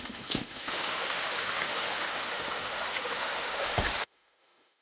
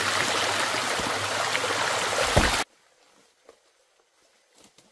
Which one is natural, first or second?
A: second